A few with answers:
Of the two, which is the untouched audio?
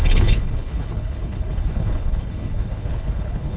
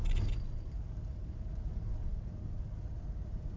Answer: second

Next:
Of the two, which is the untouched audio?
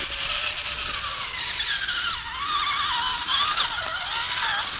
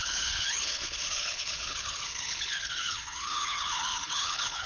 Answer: first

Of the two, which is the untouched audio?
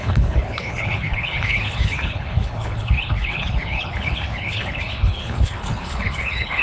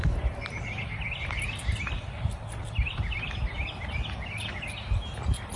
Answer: second